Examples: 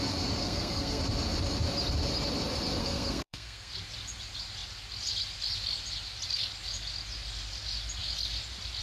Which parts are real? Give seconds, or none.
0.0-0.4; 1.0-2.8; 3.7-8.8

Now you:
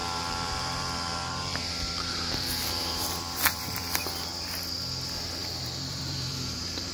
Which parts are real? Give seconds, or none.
4.0-5.4

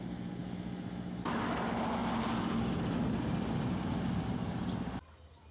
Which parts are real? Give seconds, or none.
0.0-0.4; 1.4-5.5

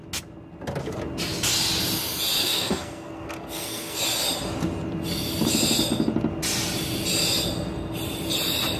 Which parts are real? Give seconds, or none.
0.0-2.4; 4.0-8.8

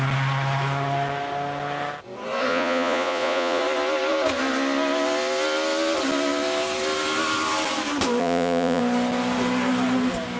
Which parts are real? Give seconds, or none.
0.0-2.5; 3.6-8.2; 8.8-10.4

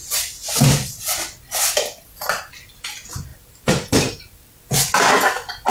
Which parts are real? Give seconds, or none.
0.0-3.3; 4.2-5.7

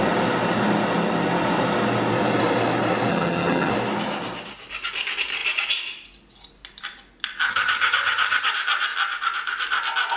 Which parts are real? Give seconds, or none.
0.0-3.1; 3.7-7.5; 8.5-10.2

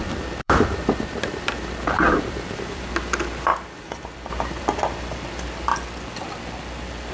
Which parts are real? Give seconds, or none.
3.5-4.3; 5.7-7.1